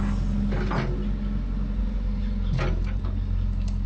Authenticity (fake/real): real